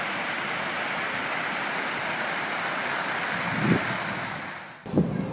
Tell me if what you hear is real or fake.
real